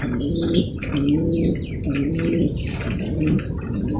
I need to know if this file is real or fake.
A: real